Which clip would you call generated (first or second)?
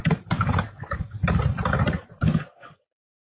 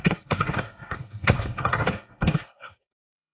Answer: second